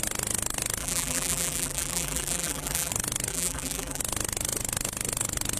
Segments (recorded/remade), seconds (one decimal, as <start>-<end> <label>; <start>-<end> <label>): 0.0-0.8 recorded; 0.8-2.9 remade; 2.9-3.3 recorded; 3.3-4.0 remade; 4.0-5.6 recorded